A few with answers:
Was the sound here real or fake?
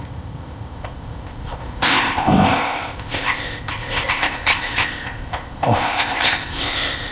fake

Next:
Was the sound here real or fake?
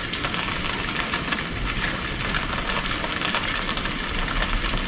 real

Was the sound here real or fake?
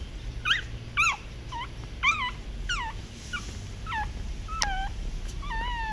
real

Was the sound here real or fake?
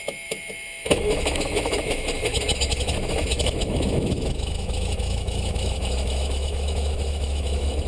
fake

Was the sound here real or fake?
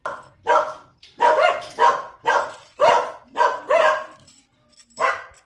real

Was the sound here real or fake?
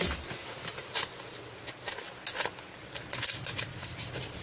real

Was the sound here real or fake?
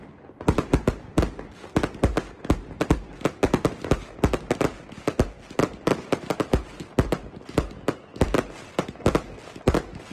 real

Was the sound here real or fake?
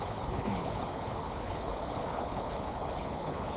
fake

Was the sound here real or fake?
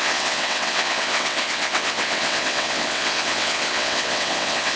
fake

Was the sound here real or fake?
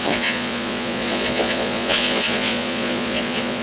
fake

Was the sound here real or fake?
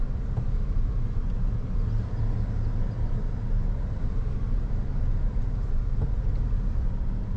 real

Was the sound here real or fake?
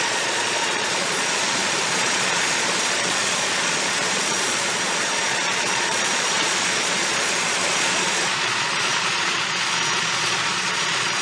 fake